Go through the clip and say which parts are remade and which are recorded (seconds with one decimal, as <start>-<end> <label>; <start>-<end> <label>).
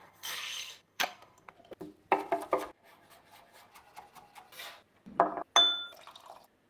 0.0-1.5 remade; 1.5-6.7 recorded